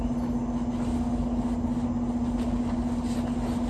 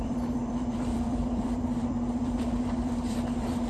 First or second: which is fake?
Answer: second